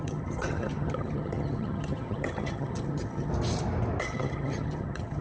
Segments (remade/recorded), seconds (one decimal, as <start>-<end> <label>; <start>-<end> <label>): 0.0-3.3 remade; 3.3-4.0 recorded; 4.0-5.2 remade